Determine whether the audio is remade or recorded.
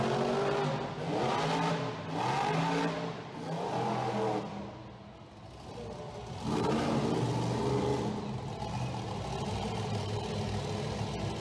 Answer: recorded